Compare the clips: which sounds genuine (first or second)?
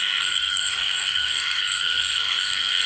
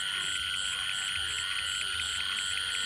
second